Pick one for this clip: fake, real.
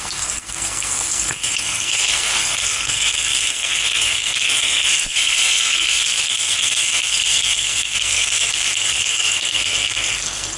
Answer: fake